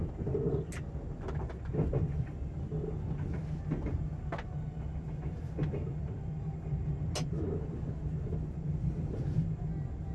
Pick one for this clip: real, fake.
real